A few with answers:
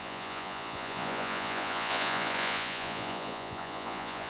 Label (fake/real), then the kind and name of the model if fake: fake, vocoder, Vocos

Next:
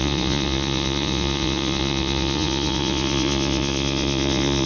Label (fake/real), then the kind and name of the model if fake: fake, vocoder, Vocos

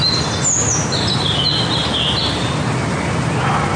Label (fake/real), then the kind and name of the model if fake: real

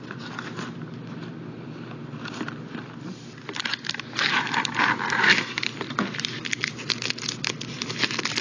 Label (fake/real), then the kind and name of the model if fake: real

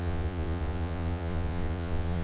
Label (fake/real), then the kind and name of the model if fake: fake, vocoder, Vocos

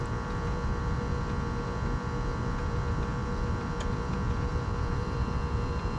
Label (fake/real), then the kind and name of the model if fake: fake, vocoder, Vocos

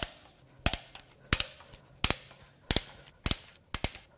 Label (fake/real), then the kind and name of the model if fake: real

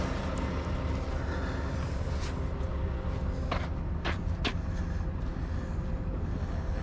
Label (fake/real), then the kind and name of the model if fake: real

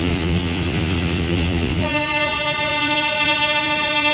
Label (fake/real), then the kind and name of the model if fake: fake, vocoder, Vocos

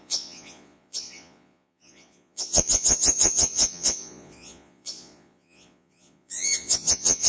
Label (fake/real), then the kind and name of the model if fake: fake, vocoder, Vocos